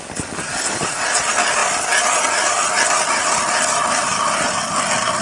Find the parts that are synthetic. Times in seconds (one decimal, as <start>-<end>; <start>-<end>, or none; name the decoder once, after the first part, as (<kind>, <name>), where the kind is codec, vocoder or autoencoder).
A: none